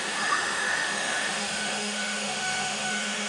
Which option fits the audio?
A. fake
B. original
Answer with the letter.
A